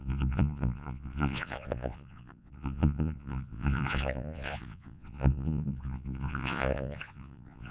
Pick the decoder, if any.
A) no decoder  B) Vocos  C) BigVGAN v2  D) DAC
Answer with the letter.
B